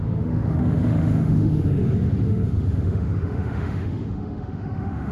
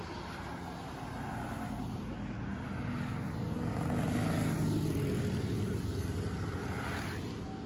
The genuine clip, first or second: second